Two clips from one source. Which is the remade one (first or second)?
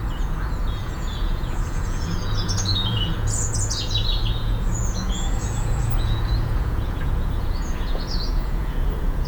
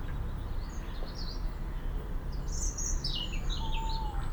first